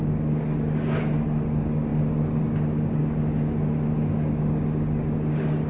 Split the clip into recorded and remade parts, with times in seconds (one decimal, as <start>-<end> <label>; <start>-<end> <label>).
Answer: 0.0-5.7 remade